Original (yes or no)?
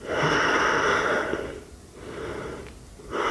yes